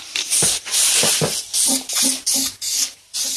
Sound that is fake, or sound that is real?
real